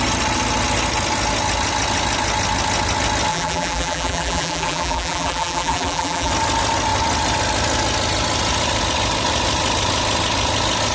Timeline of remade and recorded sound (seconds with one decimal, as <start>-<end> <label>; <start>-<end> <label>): 0.0-3.3 recorded; 3.3-6.3 remade; 6.3-10.9 recorded